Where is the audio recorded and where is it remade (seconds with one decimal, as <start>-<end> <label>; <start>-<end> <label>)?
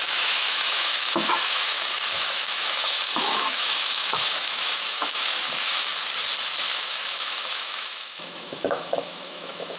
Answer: 0.0-5.9 remade; 5.9-6.7 recorded; 6.7-9.8 remade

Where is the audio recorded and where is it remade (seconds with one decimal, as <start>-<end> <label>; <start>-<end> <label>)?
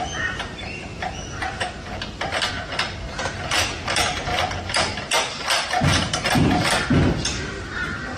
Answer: 0.0-8.2 recorded